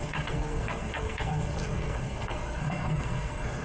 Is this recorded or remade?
remade